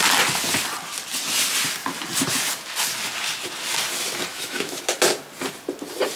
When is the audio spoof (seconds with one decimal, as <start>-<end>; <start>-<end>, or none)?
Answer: 4.3-4.8